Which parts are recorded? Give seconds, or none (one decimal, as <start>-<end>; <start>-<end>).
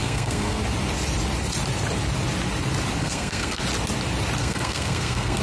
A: 0.6-3.0; 3.6-4.4